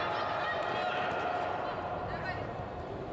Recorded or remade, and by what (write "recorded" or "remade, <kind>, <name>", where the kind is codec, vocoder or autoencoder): recorded